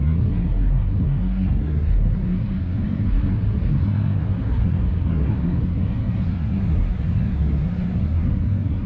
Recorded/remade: remade